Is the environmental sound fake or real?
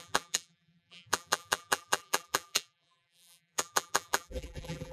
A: fake